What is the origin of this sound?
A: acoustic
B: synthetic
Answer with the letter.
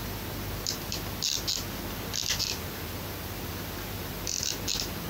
A